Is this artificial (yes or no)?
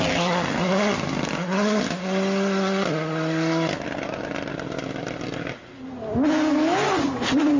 no